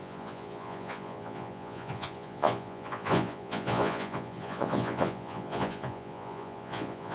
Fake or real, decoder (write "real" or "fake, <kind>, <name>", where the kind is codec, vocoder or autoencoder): fake, vocoder, Vocos